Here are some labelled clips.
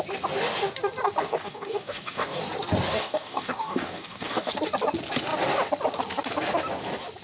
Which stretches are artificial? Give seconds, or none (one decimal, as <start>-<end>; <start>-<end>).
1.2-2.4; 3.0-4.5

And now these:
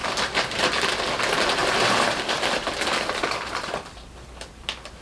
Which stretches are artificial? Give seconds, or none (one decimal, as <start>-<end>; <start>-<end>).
1.6-4.6

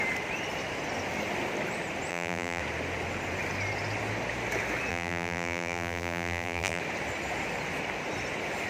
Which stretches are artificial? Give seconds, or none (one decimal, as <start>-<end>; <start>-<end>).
2.1-2.6; 4.9-6.8

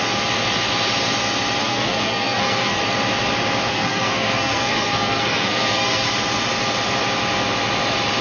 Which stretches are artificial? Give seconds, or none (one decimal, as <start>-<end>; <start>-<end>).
1.6-2.8; 3.7-6.1

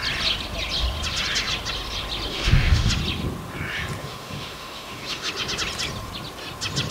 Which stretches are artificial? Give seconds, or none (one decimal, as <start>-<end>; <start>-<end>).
2.3-2.9; 4.0-5.3

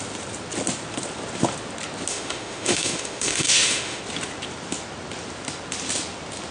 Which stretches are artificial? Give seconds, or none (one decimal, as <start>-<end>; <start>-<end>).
2.1-4.0

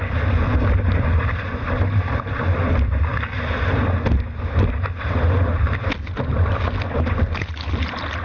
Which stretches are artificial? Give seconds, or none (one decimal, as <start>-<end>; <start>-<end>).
0.0-3.1; 6.5-8.2